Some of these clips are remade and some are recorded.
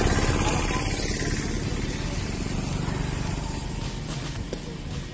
recorded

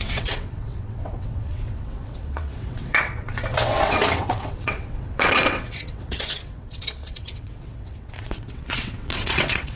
remade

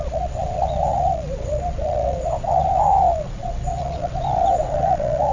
remade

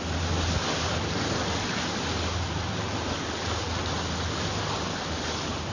recorded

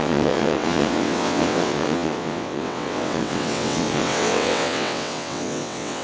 remade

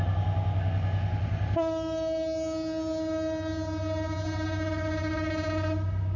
recorded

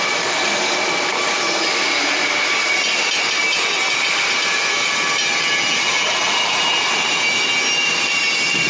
recorded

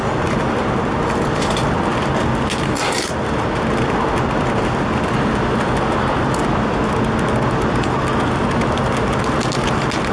recorded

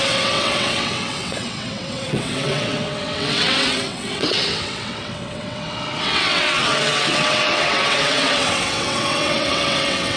remade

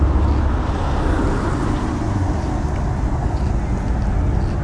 recorded